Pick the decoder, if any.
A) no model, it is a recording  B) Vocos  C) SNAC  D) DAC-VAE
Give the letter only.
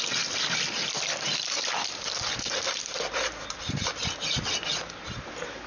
A